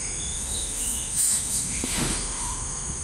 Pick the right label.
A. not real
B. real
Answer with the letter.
A